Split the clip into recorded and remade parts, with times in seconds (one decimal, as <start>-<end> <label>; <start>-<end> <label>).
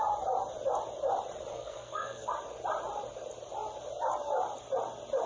0.0-1.5 recorded; 1.5-2.3 remade; 2.3-5.3 recorded